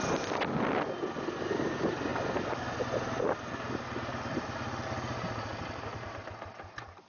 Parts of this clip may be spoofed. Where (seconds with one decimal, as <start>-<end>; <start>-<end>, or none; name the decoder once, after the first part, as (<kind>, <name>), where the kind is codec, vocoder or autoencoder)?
1.5-2.1 (vocoder, BigVGAN v2); 5.8-7.1